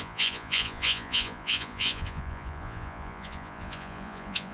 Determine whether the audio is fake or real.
fake